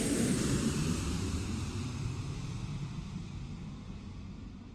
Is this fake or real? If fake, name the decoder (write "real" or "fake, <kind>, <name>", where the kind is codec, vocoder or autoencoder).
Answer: real